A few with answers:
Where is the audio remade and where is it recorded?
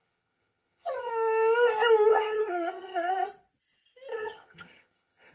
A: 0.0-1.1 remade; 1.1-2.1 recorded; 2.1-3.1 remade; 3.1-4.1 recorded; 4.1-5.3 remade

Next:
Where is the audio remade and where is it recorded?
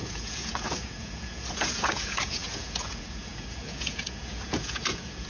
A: 0.0-5.3 remade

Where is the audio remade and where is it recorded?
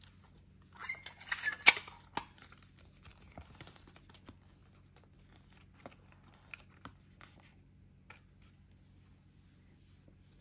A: 0.0-10.4 recorded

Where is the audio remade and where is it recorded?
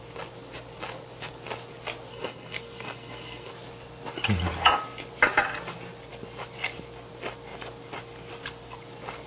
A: 0.0-2.1 recorded; 2.1-3.5 remade; 3.5-9.3 recorded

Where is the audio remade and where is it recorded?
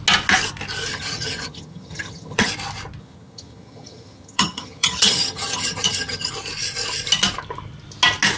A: 0.0-0.9 recorded; 0.9-2.5 remade; 2.5-3.0 recorded; 3.0-6.3 remade; 6.3-8.4 recorded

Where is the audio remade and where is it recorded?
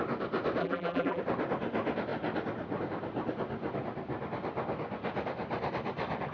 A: 0.0-0.6 recorded; 0.6-1.2 remade; 1.2-6.3 recorded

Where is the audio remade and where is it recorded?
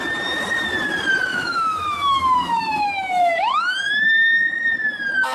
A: 0.0-1.3 recorded; 1.3-4.5 remade; 4.5-5.3 recorded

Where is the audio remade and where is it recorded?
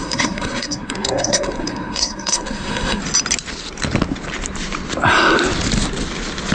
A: 0.0-3.0 remade; 3.0-6.5 recorded